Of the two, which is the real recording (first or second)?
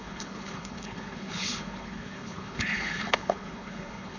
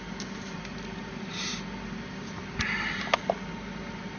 second